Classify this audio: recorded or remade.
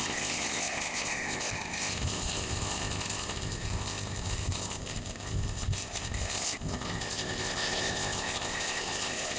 remade